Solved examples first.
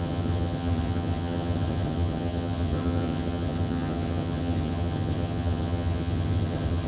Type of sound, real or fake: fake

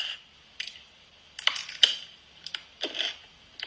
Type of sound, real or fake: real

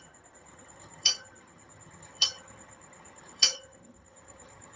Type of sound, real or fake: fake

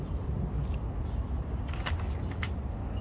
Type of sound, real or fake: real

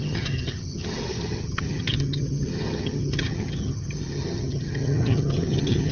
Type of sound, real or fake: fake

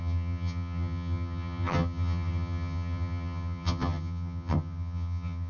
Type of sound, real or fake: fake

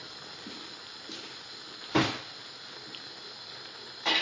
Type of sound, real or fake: real